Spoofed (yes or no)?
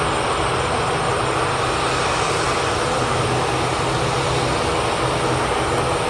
no